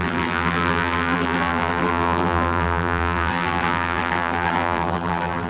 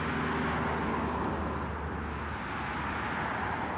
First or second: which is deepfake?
first